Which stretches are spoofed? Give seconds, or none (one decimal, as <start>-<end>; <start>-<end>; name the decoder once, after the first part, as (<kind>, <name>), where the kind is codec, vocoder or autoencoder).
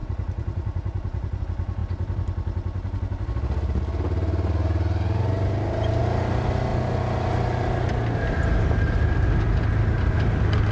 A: 0.0-1.4 (vocoder, Vocos)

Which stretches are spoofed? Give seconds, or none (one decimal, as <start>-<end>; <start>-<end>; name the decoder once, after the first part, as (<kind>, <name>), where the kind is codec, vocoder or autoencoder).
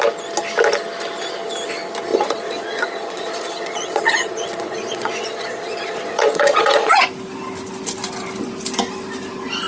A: 2.1-7.0 (vocoder, Vocos)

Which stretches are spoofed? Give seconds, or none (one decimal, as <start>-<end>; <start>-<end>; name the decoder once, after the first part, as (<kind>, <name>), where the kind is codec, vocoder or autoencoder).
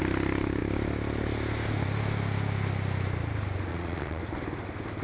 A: 3.7-4.2 (vocoder, Vocos)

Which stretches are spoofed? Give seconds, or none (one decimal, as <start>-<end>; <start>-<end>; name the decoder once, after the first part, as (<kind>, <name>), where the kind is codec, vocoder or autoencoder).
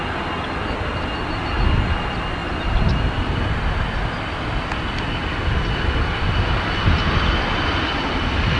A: none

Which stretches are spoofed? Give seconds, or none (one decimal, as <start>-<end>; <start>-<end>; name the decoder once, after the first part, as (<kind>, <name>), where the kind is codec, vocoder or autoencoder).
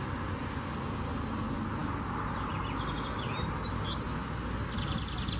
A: none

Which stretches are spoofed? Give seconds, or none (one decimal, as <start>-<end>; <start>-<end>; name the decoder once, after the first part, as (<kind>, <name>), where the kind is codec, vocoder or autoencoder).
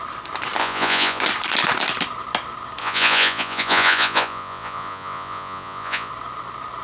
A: 0.6-1.2 (vocoder, Vocos); 2.8-6.1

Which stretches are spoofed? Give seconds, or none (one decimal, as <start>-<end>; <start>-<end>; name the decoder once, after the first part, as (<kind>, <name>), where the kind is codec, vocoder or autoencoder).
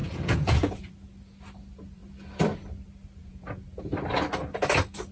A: 0.0-0.9 (vocoder, Vocos); 3.2-3.8